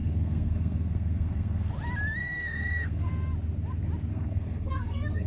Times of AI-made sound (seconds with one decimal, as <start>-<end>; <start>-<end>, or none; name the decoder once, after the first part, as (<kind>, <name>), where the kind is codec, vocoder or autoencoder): 0.0-1.7 (codec, SNAC); 2.2-3.1; 4.1-5.3

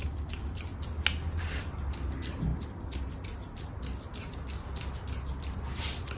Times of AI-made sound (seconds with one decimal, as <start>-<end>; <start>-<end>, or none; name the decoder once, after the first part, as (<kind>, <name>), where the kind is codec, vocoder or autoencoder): none